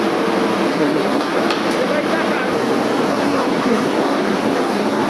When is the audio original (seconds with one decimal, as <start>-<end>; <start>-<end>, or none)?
0.0-0.7; 1.4-3.1